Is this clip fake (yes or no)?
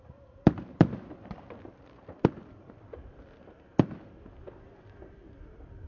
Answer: yes